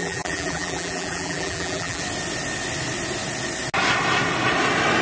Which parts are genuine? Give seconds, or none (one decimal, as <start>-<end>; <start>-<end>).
2.0-5.0

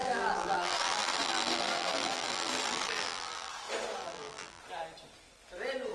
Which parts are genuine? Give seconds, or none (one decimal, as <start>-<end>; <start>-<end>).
3.5-4.0; 4.6-5.9